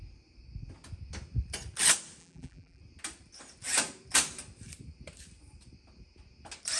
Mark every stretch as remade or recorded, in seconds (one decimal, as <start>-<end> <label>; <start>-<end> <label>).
0.0-2.2 recorded; 2.2-2.8 remade; 2.8-6.8 recorded